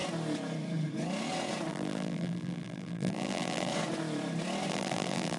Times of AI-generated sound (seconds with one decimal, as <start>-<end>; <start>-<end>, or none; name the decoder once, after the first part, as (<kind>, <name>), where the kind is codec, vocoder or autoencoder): 1.7-3.7 (vocoder, BigVGAN v2); 4.7-5.4